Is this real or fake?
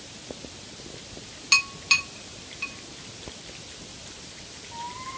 real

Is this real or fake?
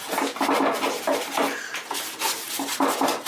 real